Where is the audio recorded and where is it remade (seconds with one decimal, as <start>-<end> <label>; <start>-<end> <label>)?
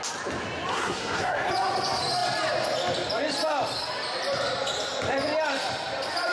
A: 0.0-0.7 recorded; 0.7-1.5 remade; 1.5-6.3 recorded